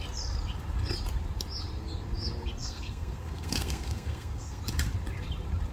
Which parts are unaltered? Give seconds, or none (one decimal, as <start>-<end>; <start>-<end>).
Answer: 0.0-2.6; 4.6-5.7